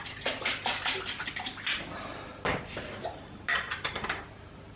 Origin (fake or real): fake